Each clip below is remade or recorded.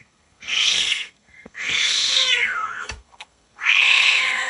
remade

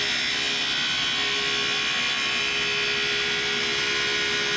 recorded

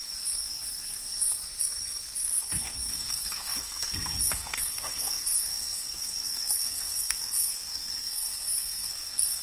remade